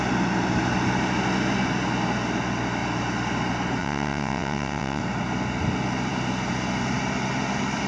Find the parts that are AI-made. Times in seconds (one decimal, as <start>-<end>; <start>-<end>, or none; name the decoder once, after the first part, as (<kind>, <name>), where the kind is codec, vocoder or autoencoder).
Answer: 3.8-5.0 (vocoder, WaveNeXt)